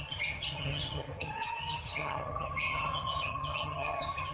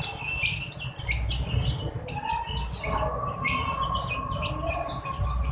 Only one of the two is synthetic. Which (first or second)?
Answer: first